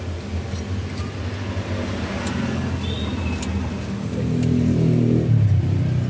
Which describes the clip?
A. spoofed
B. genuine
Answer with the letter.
B